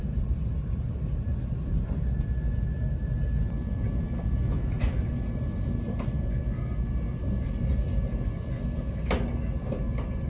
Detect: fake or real real